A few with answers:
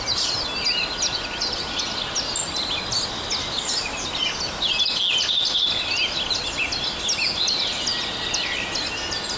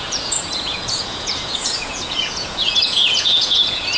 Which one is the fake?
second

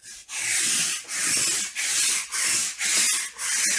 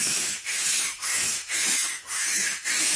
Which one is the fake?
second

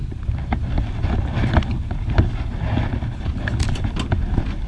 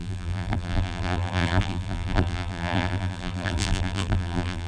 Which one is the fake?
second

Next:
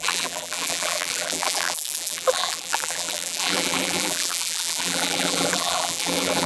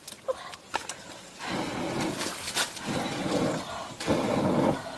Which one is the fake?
first